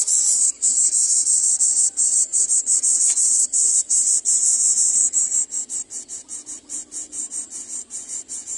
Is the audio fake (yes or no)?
no